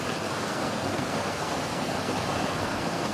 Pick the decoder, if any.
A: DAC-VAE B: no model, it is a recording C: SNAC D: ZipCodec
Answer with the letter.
C